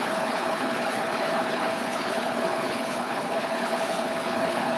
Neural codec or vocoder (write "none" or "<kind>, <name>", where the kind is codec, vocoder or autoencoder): codec, HILCodec